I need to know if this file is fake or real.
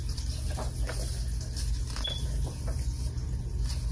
real